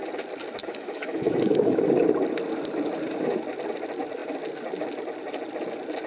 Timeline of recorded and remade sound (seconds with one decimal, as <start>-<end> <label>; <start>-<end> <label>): 0.0-0.6 recorded; 0.6-1.8 remade; 1.8-6.1 recorded